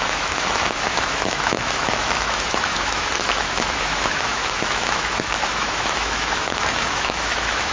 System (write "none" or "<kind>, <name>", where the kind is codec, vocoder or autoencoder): autoencoder, DAC-VAE